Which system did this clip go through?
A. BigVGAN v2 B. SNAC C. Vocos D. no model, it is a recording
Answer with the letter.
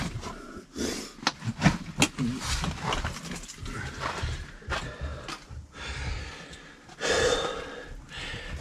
D